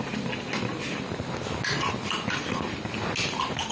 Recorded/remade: recorded